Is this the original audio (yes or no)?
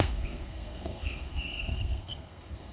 no